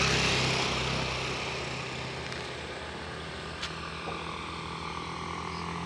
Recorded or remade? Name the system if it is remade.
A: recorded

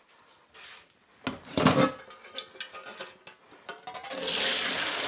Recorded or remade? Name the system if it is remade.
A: recorded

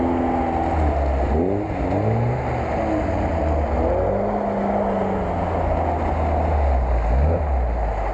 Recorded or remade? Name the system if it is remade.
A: recorded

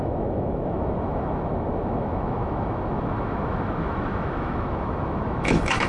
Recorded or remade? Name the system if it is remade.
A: remade, autoencoder, DAC-VAE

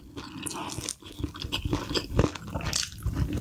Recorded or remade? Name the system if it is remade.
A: recorded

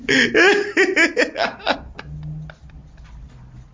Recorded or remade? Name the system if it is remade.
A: recorded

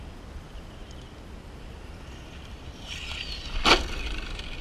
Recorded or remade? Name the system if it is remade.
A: recorded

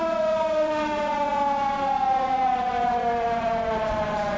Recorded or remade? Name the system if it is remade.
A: remade, vocoder, Vocos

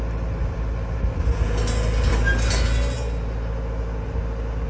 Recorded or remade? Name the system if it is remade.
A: recorded